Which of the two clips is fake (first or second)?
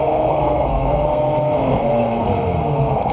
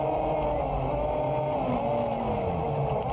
first